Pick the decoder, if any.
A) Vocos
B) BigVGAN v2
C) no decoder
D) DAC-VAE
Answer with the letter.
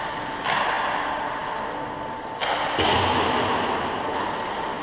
C